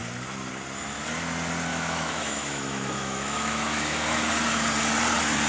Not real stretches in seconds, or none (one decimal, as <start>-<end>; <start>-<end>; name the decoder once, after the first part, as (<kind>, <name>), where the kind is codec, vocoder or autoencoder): 1.7-4.3 (autoencoder, DAC-VAE)